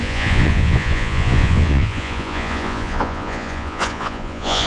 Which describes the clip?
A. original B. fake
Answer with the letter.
B